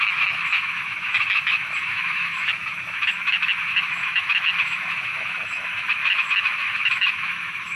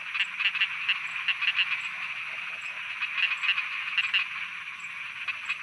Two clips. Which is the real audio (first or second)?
second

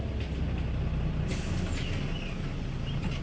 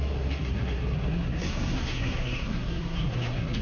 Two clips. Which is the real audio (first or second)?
first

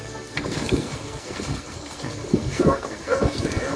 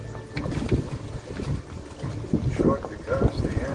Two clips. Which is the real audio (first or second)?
second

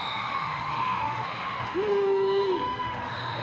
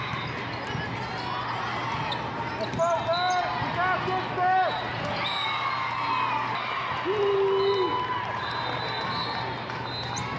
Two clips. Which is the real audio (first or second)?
second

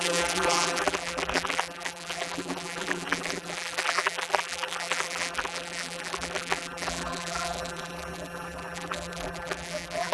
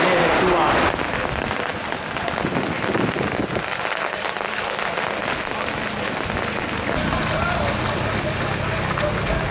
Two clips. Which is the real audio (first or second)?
second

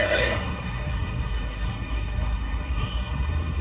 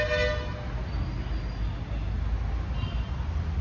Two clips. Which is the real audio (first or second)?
second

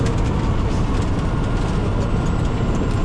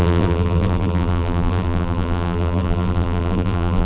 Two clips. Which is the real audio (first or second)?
first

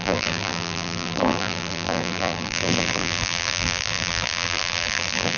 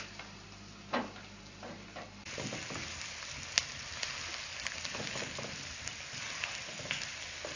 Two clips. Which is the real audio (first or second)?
second